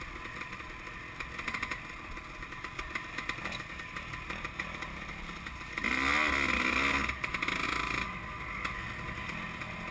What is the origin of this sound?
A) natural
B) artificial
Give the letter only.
A